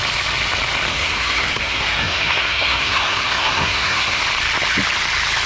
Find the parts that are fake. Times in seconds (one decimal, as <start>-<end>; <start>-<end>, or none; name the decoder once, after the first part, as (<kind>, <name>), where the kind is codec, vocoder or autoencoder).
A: 0.9-4.2 (codec, SNAC)